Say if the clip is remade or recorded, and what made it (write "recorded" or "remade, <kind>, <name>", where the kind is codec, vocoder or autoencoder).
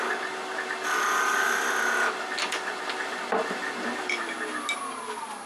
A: recorded